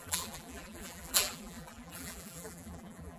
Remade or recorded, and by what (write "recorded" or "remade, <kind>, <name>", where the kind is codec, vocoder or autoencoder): remade, vocoder, BigVGAN v2